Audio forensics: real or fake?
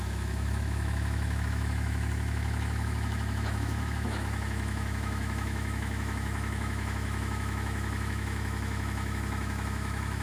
fake